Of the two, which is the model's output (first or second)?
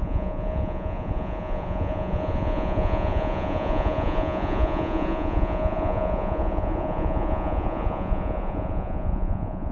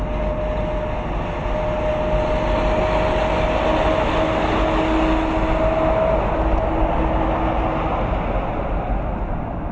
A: first